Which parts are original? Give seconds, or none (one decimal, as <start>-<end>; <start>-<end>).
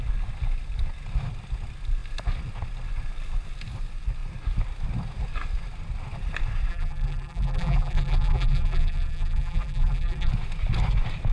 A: 0.0-6.7; 10.3-11.3